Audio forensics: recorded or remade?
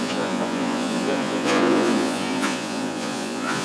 remade